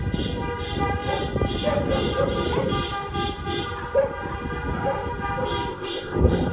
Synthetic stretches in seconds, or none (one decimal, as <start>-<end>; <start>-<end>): 5.7-6.5